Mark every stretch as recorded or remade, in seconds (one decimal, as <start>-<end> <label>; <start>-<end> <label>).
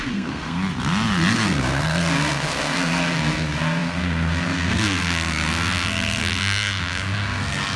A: 0.0-0.6 remade; 0.6-1.3 recorded; 1.3-7.8 remade